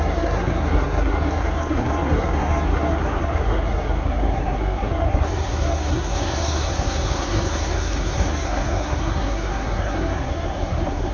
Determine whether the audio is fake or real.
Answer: fake